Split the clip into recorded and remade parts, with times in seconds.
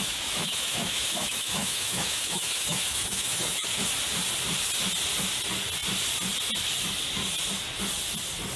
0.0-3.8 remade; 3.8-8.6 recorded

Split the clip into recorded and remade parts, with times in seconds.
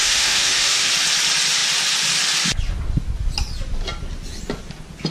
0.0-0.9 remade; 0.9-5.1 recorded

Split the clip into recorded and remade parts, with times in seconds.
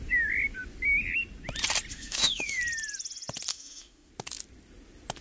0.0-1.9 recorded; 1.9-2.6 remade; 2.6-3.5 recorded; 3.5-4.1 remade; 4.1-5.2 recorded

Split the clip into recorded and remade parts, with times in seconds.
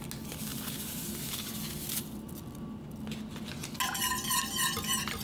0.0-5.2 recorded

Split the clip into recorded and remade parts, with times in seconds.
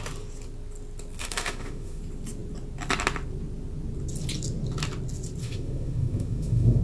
0.0-1.2 recorded; 1.2-2.0 remade; 2.0-5.4 recorded; 5.4-6.8 remade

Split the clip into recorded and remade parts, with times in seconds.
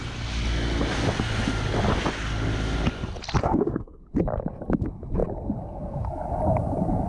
0.0-3.4 recorded; 3.4-4.0 remade; 4.0-7.1 recorded